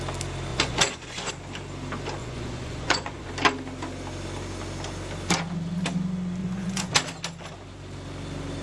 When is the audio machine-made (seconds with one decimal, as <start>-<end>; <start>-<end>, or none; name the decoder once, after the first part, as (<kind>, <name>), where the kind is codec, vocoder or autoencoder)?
0.5-1.3 (vocoder, Vocos); 2.2-3.3; 6.4-6.9